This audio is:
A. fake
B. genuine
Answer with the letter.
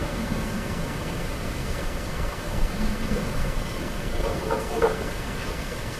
A